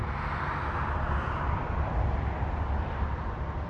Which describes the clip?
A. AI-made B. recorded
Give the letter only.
A